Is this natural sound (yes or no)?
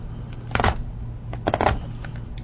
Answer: yes